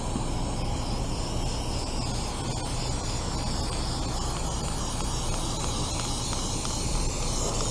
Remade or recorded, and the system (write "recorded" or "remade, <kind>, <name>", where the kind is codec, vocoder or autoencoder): recorded